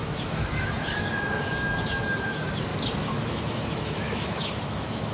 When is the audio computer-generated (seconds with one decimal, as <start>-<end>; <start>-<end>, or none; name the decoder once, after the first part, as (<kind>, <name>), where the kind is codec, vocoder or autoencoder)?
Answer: 0.0-2.7 (autoencoder, DAC-VAE); 3.3-5.1